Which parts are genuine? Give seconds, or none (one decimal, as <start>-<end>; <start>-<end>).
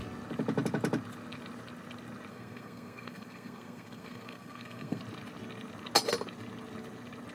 0.0-2.3; 5.0-7.3